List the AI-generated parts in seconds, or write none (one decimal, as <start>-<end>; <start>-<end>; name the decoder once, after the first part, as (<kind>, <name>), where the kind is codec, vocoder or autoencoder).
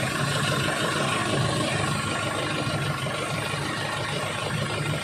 0.0-1.2 (vocoder, BigVGAN v2); 4.2-5.0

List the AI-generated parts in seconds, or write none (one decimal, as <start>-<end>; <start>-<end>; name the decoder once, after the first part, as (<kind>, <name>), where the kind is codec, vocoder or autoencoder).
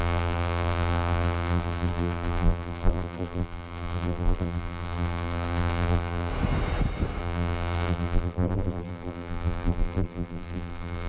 0.0-6.3 (vocoder, BigVGAN v2); 7.2-11.1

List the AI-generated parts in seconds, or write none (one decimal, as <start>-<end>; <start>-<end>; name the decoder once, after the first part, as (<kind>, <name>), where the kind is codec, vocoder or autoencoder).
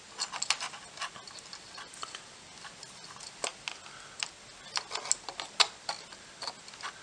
none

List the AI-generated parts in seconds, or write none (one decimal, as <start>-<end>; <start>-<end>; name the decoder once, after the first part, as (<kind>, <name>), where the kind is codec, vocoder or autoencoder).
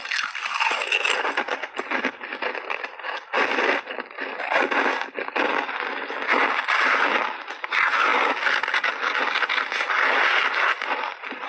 none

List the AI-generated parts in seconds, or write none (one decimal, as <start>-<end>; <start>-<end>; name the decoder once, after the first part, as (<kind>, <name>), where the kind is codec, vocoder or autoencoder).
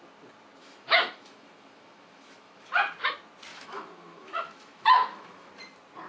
0.6-2.7 (autoencoder, DAC-VAE); 3.5-5.5